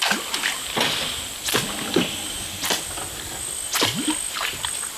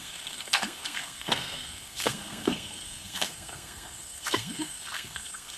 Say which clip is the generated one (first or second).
second